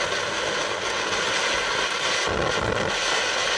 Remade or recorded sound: recorded